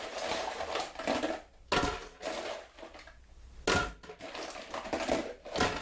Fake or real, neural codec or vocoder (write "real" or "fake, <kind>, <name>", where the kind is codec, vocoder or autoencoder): real